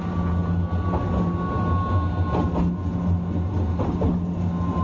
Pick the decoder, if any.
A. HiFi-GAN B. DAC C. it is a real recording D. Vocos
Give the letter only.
C